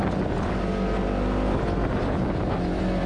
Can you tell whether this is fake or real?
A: real